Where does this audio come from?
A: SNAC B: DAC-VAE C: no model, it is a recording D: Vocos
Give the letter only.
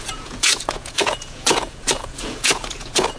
D